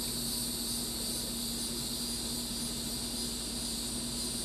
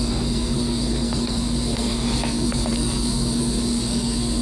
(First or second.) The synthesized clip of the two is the second